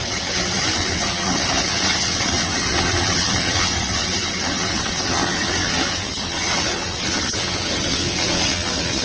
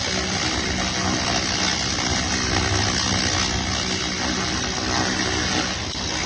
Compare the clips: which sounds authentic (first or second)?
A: second